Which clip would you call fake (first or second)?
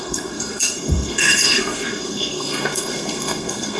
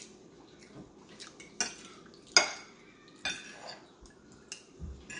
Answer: first